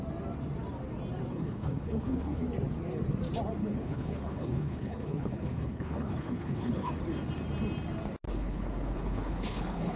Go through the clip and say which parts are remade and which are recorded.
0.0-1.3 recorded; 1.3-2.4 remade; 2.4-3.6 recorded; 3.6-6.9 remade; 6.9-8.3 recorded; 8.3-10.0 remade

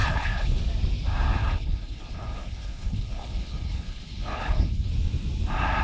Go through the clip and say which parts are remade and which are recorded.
0.0-0.6 remade; 0.6-1.4 recorded; 1.4-4.9 remade; 4.9-5.8 recorded

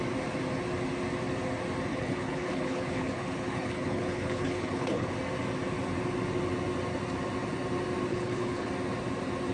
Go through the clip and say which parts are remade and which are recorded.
0.0-1.9 recorded; 1.9-5.1 remade; 5.1-8.1 recorded; 8.1-8.7 remade; 8.7-9.5 recorded

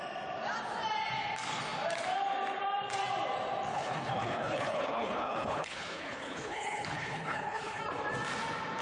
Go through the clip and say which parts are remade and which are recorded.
0.0-3.7 recorded; 3.7-7.8 remade; 7.8-8.8 recorded

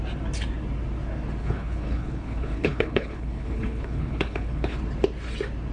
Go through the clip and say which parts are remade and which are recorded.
0.0-1.4 recorded; 1.4-4.8 remade; 4.8-5.7 recorded

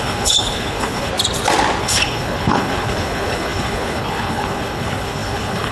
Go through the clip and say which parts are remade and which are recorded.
0.0-1.1 remade; 1.1-1.8 recorded; 1.8-5.7 remade

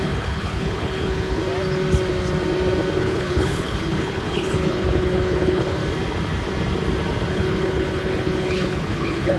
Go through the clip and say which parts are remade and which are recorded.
0.0-1.4 remade; 1.4-3.0 recorded; 3.0-5.8 remade; 5.8-7.3 recorded; 7.3-9.4 remade

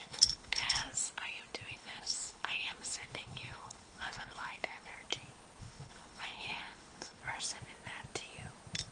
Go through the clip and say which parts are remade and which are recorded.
0.0-0.8 remade; 0.8-1.7 recorded; 1.7-4.9 remade; 4.9-5.6 recorded; 5.6-7.2 remade; 7.2-8.9 recorded